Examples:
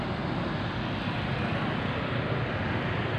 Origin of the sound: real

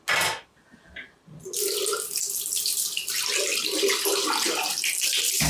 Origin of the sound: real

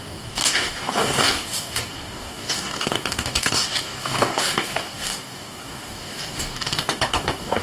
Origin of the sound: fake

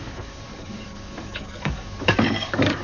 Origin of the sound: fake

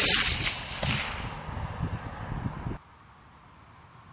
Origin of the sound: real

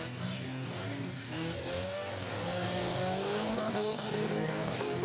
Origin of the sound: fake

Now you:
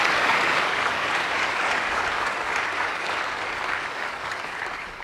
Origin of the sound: fake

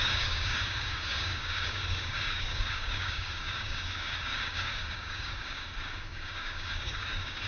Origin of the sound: fake